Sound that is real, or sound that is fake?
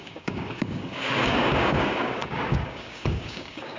fake